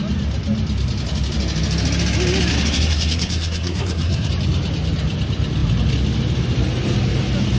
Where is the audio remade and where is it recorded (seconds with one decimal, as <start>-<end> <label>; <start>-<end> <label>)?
0.0-2.5 recorded; 2.5-4.3 remade; 4.3-7.6 recorded